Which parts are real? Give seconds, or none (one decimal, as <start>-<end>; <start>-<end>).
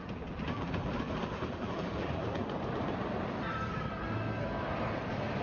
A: 2.4-5.4